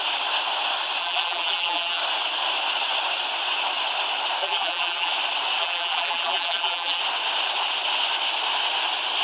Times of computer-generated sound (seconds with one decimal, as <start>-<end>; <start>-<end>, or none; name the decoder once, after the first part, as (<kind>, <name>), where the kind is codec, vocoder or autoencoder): 1.0-2.0 (vocoder, BigVGAN v2); 4.4-5.1; 5.6-7.0